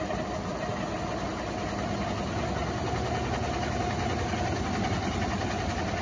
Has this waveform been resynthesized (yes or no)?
no